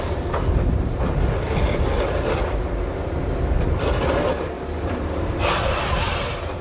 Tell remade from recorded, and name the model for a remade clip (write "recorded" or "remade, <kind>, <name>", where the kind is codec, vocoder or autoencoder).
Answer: recorded